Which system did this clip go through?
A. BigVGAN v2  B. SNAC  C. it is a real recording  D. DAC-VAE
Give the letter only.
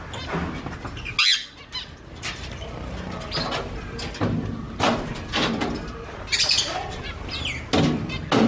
C